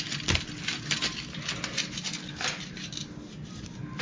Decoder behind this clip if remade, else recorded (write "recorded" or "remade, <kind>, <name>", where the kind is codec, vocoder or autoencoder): recorded